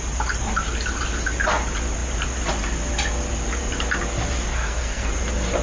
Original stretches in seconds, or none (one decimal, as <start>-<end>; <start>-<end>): 0.0-4.5; 5.1-5.6